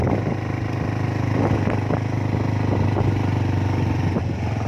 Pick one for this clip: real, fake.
real